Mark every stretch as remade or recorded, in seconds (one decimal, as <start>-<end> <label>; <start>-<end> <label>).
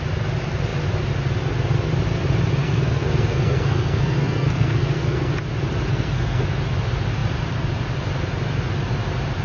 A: 0.0-2.6 recorded; 2.6-5.3 remade; 5.3-5.9 recorded; 5.9-6.4 remade; 6.4-9.4 recorded